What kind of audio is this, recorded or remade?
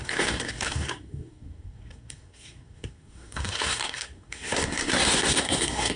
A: remade